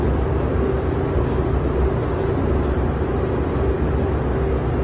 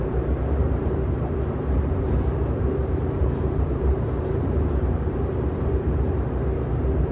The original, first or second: first